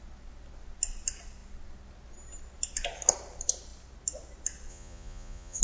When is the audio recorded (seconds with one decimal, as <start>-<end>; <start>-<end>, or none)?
0.0-4.7